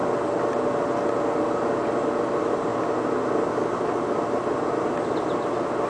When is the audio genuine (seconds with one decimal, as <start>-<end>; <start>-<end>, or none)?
0.0-5.9